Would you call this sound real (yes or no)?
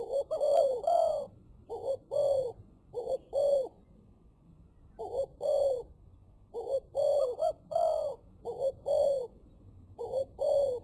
no